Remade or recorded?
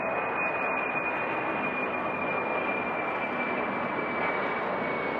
recorded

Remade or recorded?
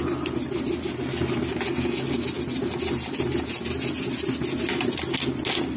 recorded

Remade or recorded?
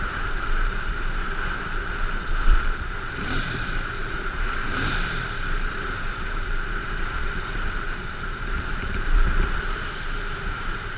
remade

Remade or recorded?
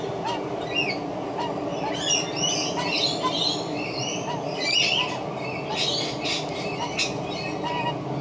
recorded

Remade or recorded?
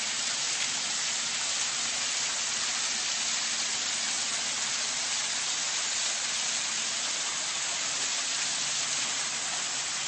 recorded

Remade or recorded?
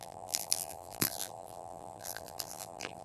remade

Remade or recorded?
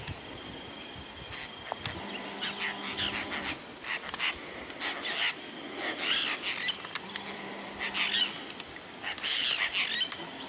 recorded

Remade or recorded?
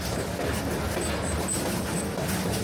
recorded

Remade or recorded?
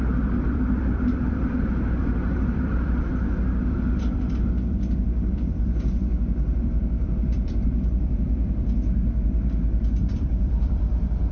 remade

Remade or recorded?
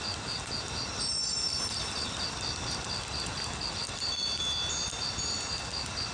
recorded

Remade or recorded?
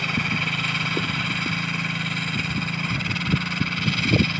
recorded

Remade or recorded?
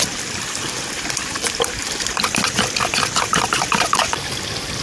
recorded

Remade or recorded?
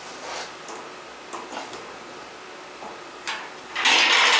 recorded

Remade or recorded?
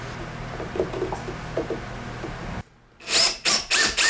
recorded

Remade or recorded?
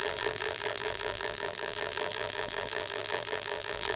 remade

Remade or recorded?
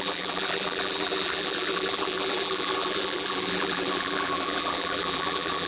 remade